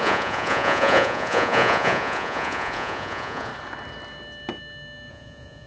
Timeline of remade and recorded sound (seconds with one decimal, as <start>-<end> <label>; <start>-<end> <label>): 0.0-3.5 remade; 3.5-5.1 recorded; 5.1-5.7 remade